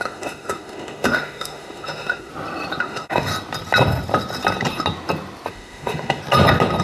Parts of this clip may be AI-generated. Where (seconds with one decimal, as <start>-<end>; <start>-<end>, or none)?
0.0-2.3; 2.8-3.3; 5.5-6.2